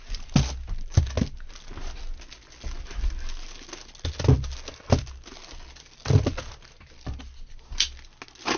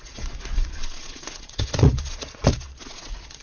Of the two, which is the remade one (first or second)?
second